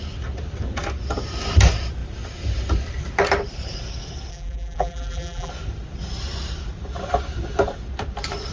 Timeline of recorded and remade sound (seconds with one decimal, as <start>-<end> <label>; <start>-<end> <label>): 0.0-4.3 recorded; 4.3-5.5 remade; 5.5-8.5 recorded